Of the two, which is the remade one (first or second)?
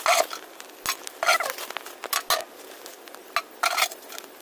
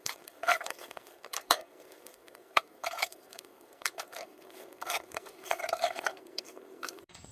second